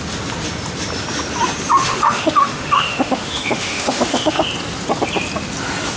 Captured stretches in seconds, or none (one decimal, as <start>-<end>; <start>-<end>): 0.0-1.8; 4.4-6.0